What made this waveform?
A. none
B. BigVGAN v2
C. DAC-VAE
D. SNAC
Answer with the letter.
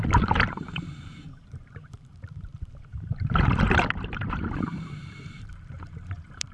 B